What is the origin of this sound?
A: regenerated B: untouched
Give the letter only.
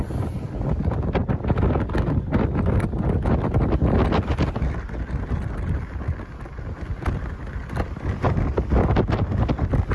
B